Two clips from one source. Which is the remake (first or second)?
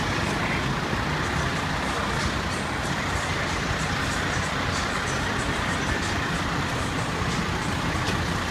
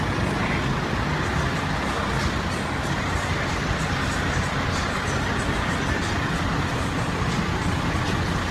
first